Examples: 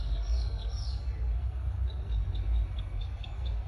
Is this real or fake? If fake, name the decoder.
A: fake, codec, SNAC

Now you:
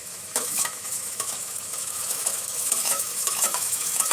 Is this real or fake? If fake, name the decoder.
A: fake, autoencoder, DAC-VAE